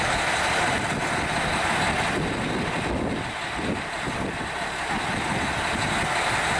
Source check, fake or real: real